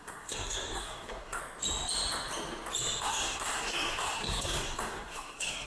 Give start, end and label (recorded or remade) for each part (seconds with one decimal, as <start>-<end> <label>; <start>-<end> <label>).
0.0-1.4 remade; 1.4-3.0 recorded; 3.0-5.7 remade

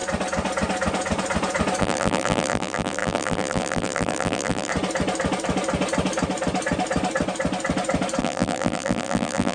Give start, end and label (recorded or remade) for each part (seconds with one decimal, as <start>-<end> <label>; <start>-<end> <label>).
0.0-1.8 recorded; 1.8-4.7 remade; 4.7-8.2 recorded; 8.2-9.5 remade

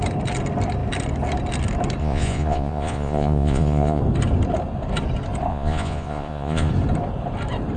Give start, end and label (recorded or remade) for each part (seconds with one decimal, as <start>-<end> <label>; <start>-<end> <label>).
0.0-2.0 recorded; 2.0-4.0 remade; 4.0-5.5 recorded; 5.5-6.7 remade; 6.7-7.8 recorded

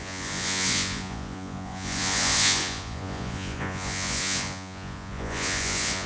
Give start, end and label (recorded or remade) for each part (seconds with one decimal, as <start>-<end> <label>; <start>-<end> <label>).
0.0-6.1 remade

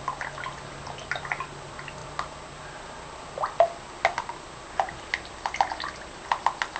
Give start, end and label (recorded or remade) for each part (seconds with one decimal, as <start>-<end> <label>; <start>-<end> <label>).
0.0-6.8 recorded

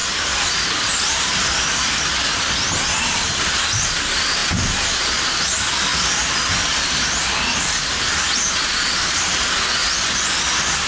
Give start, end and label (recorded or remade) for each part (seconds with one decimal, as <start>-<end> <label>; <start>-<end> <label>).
0.0-9.8 recorded; 9.8-10.4 remade; 10.4-10.9 recorded

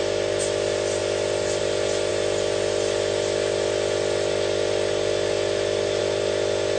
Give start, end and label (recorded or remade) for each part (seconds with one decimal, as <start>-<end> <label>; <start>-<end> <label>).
0.0-6.8 recorded